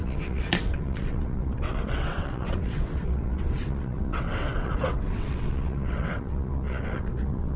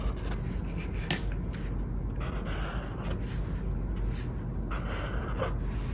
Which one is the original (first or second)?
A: second